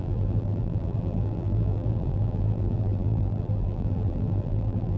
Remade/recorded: remade